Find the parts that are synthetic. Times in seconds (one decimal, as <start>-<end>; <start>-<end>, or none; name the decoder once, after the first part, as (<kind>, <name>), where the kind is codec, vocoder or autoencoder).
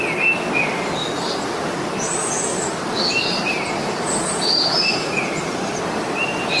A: 2.5-3.1 (vocoder, BigVGAN v2); 3.8-5.8